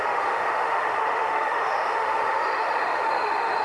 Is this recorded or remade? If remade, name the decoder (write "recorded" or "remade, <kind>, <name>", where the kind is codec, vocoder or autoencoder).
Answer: remade, autoencoder, DAC-VAE